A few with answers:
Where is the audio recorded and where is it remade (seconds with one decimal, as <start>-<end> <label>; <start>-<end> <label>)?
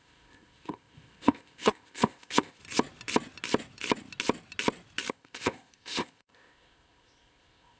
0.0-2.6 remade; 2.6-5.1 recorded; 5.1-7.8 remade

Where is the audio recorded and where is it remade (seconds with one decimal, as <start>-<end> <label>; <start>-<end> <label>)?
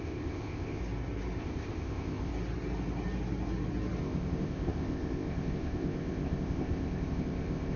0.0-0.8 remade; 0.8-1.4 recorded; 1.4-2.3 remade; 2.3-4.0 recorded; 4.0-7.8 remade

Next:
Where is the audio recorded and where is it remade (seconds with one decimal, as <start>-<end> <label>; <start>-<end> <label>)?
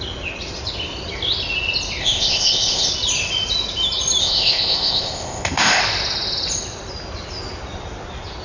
0.0-2.0 recorded; 2.0-2.9 remade; 2.9-4.2 recorded; 4.2-5.8 remade; 5.8-8.4 recorded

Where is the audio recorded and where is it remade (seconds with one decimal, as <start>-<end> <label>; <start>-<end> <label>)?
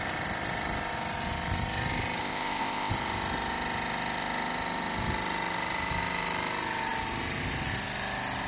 0.0-2.2 recorded; 2.2-2.9 remade; 2.9-8.5 recorded